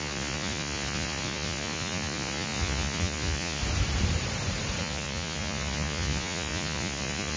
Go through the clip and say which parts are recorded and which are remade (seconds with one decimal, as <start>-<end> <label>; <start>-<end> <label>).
0.0-3.6 remade; 3.6-4.8 recorded; 4.8-7.4 remade